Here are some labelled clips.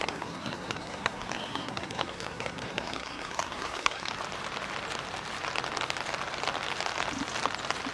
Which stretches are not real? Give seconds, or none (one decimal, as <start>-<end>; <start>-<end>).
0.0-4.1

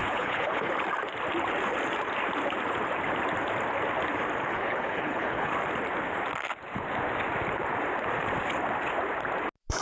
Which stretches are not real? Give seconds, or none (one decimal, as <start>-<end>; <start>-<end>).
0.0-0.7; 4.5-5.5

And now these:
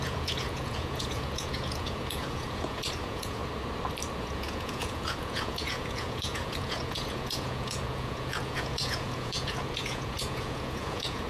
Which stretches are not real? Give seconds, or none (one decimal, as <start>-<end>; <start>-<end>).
0.0-3.4; 4.2-11.3

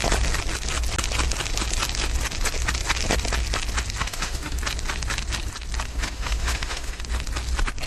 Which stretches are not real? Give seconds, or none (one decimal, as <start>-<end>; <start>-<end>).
4.0-4.6; 5.9-7.0

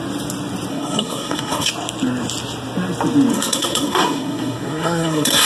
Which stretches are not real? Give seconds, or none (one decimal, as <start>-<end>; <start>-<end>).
0.7-1.7; 3.3-5.5

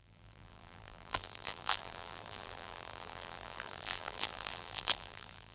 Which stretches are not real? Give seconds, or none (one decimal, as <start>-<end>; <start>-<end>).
0.0-5.5

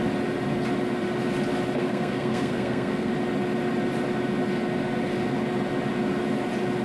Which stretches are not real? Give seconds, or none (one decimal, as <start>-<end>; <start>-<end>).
1.8-3.1

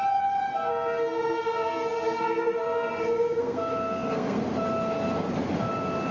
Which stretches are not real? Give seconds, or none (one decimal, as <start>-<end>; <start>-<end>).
0.7-4.4